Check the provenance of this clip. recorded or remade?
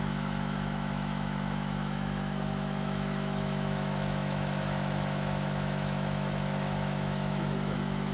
remade